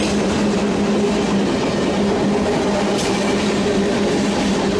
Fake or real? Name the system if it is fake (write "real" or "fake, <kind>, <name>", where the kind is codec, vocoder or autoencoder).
real